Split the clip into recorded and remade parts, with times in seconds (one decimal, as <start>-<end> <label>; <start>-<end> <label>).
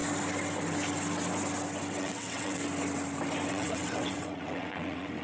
0.0-2.0 recorded; 2.0-2.6 remade; 2.6-3.5 recorded; 3.5-5.2 remade